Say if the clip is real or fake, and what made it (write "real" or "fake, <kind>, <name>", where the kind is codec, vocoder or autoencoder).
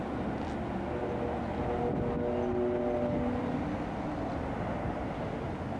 real